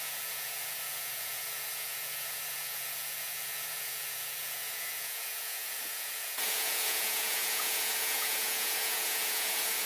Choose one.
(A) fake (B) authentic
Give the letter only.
A